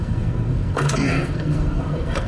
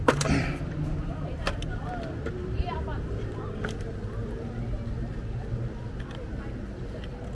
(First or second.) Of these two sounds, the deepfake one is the first